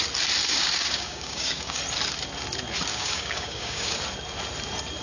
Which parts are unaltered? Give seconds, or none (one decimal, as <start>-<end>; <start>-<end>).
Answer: 0.0-0.4; 1.8-2.9; 4.0-5.0